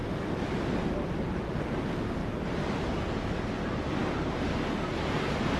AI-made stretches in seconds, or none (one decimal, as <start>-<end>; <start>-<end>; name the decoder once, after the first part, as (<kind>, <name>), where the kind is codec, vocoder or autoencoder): 0.0-1.4 (vocoder, BigVGAN v2)